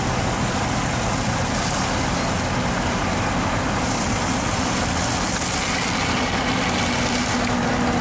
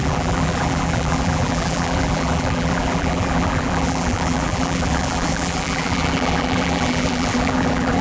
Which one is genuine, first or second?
first